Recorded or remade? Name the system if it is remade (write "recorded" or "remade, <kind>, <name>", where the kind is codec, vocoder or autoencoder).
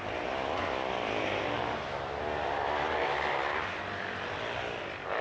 recorded